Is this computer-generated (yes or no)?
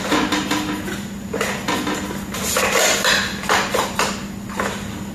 no